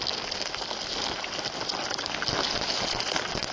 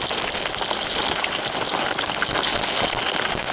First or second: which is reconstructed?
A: first